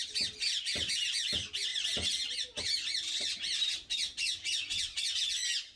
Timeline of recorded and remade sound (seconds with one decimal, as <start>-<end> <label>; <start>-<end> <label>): 0.0-1.7 recorded; 1.7-5.2 remade; 5.2-5.8 recorded